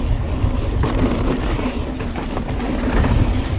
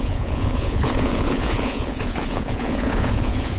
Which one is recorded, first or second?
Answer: first